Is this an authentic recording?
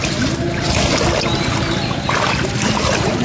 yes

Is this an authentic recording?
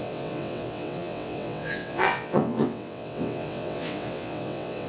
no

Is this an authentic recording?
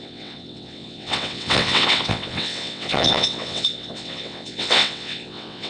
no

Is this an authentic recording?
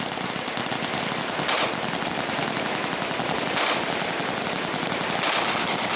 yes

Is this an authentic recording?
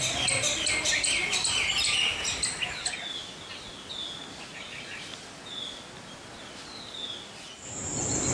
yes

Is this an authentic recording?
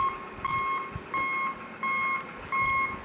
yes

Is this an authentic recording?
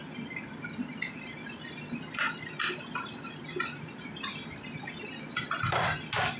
yes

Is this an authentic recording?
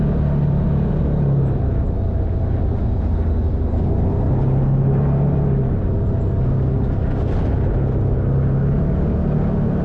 yes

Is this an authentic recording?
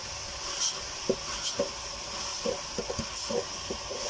yes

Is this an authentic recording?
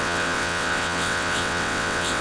no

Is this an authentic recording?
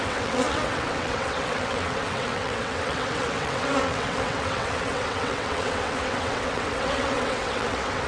no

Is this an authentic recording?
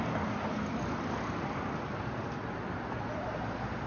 yes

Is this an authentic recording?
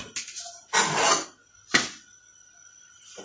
yes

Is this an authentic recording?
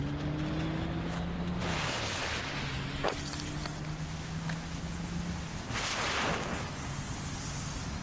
yes